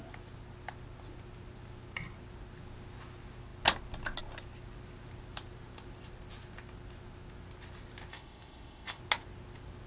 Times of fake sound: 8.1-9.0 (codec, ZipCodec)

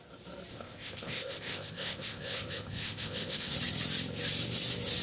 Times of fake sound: 0.5-3.5 (codec, ZipCodec)

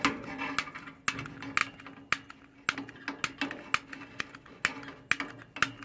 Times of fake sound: none

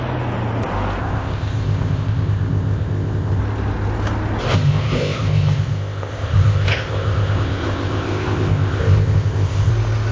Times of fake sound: 1.0-3.4 (codec, ZipCodec); 4.5-9.7

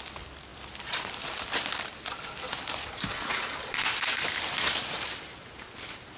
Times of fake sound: none

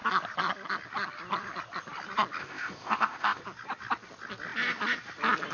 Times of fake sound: 2.4-3.4 (codec, ZipCodec)